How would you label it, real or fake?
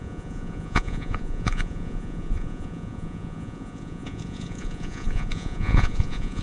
fake